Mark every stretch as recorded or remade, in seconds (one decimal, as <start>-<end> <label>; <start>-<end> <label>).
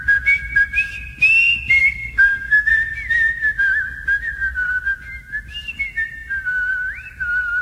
0.0-1.8 recorded; 1.8-2.7 remade; 2.7-7.6 recorded